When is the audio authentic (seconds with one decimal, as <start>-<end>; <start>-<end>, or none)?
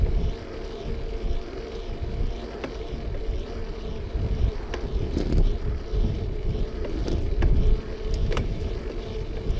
0.0-8.2; 8.7-9.6